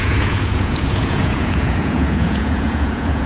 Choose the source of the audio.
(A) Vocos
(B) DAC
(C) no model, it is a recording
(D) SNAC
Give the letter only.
A